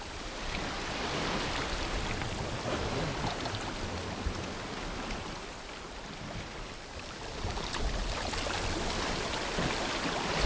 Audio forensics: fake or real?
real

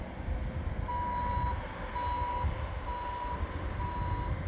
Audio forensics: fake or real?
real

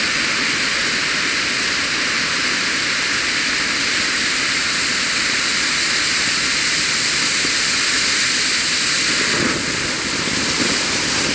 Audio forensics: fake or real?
real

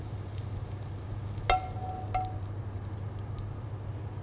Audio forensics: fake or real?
real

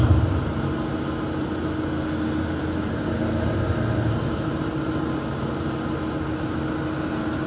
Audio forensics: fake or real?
real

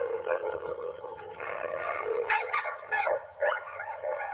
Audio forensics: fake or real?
fake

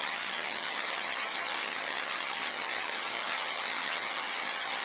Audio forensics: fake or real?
fake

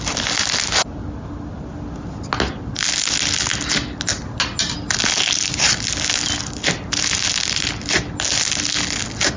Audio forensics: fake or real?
real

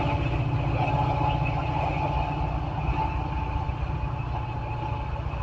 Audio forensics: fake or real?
real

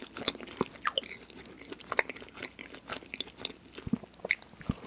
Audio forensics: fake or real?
real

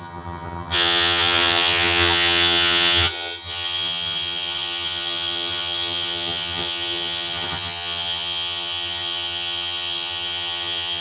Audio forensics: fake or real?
fake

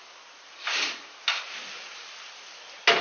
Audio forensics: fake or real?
real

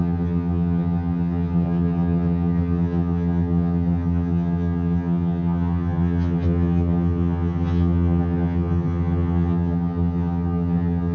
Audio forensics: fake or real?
fake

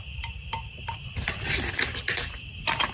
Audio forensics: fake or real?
real